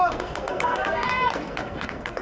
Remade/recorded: remade